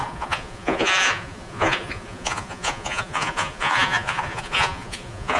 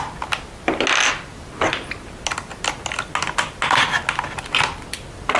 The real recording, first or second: second